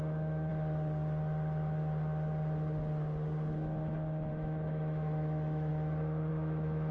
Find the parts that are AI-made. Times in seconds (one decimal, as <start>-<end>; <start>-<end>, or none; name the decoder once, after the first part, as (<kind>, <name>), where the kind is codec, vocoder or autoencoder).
0.0-0.5 (autoencoder, DAC-VAE); 4.3-6.9